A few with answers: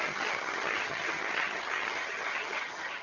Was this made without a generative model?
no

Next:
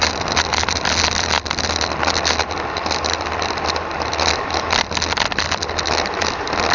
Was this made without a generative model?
yes